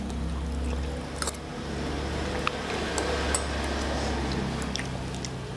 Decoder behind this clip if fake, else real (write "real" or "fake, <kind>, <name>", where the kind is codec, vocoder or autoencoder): real